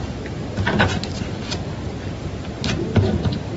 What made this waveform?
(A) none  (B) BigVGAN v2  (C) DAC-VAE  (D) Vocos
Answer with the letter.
A